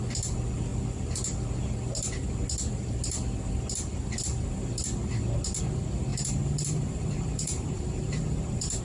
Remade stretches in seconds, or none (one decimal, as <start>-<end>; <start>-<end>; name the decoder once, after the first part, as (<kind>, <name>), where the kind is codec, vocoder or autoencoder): 6.1-8.8 (vocoder, BigVGAN v2)